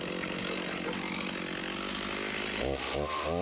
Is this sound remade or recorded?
recorded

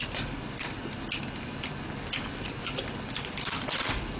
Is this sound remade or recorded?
recorded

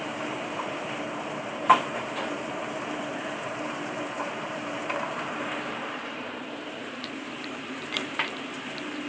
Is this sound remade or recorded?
remade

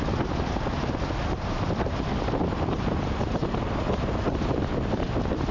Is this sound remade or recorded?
recorded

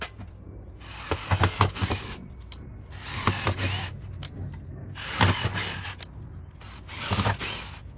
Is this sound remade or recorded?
recorded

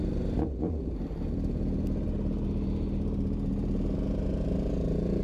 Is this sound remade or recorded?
recorded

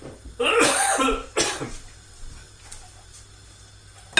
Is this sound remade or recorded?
recorded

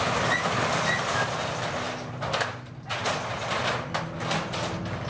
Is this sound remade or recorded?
recorded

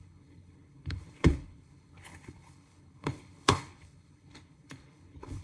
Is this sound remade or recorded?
remade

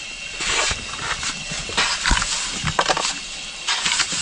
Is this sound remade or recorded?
recorded